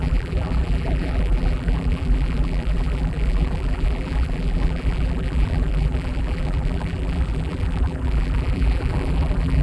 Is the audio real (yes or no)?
no